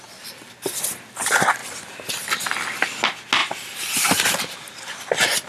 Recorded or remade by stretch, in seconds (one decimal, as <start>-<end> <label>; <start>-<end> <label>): 0.0-1.6 recorded; 1.6-2.1 remade; 2.1-3.4 recorded; 3.4-5.0 remade; 5.0-5.5 recorded